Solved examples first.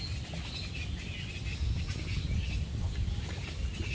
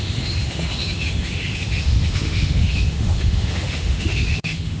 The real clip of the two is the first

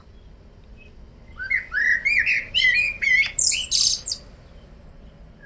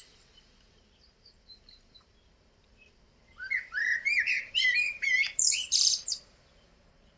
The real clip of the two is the first